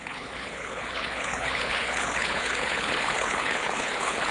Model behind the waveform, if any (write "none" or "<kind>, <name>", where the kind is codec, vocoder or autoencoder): codec, HILCodec